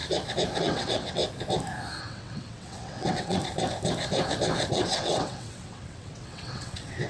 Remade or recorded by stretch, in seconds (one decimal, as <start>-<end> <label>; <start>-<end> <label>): 0.0-0.6 recorded; 0.6-1.2 remade; 1.2-2.0 recorded; 2.0-3.4 remade; 3.4-4.7 recorded; 4.7-7.1 remade